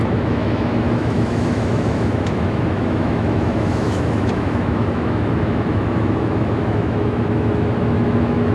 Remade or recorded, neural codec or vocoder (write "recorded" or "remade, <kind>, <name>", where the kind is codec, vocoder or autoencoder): remade, autoencoder, DAC-VAE